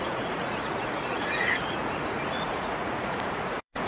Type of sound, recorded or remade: remade